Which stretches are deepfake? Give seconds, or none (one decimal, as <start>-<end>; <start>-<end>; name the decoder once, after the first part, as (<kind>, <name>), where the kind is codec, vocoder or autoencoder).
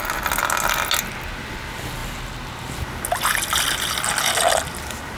none